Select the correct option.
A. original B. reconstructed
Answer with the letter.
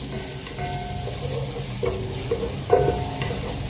A